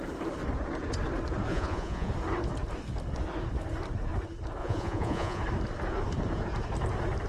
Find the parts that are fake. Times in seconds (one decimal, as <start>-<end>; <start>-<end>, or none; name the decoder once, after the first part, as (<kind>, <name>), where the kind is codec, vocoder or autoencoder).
1.5-2.1 (vocoder, Vocos); 4.6-5.4